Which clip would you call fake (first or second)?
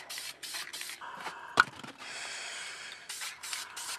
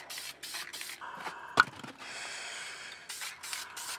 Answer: first